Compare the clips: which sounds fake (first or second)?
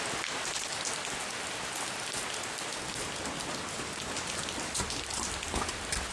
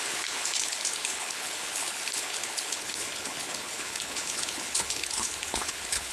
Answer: second